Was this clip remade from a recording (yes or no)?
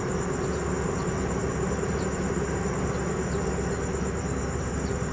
no